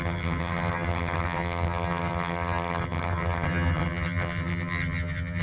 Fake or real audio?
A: fake